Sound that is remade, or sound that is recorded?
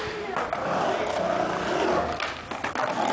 recorded